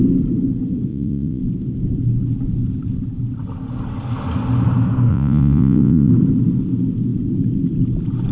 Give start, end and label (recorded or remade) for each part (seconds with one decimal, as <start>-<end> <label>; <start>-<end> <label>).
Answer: 0.0-0.9 recorded; 0.9-1.4 remade; 1.4-5.1 recorded; 5.1-6.1 remade; 6.1-8.3 recorded